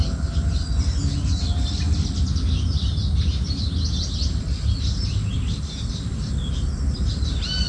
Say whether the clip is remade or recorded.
recorded